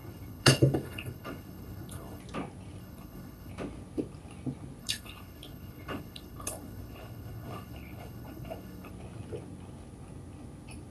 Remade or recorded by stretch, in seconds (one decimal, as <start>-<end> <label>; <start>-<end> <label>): 0.0-2.2 remade; 2.2-2.8 recorded; 2.8-3.5 remade; 3.5-4.8 recorded; 4.8-8.9 remade; 8.9-10.9 recorded